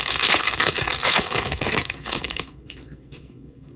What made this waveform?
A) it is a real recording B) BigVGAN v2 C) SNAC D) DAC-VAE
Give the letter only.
C